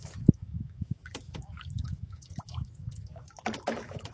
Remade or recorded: remade